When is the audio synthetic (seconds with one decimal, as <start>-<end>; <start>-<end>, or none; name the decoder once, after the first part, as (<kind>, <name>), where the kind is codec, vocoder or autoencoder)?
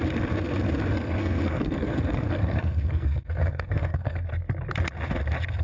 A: 0.9-4.3 (codec, SNAC)